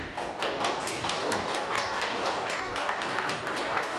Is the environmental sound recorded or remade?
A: remade